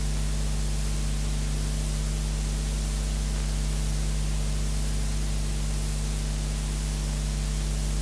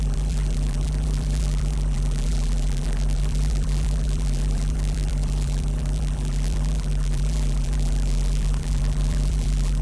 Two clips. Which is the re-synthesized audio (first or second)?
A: second